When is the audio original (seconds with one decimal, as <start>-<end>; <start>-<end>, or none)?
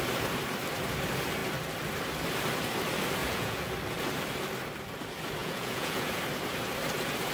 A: 0.0-3.2; 3.7-5.4; 6.2-7.3